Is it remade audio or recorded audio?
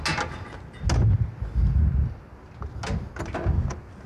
recorded